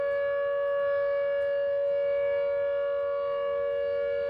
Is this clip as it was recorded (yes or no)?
yes